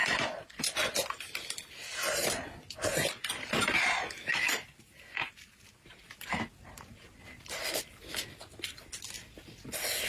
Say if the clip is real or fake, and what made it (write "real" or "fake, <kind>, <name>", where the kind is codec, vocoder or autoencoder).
real